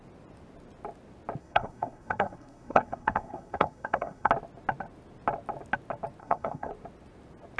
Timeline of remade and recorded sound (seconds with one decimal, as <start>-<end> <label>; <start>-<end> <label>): 0.0-1.4 recorded; 1.4-4.3 remade; 4.3-6.2 recorded; 6.2-6.7 remade; 6.7-7.6 recorded